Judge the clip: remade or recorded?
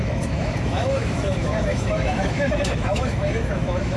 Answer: remade